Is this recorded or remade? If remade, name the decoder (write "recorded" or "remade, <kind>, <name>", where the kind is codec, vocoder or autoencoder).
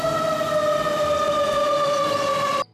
recorded